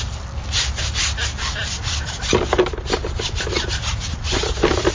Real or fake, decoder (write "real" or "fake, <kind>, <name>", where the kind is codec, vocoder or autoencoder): real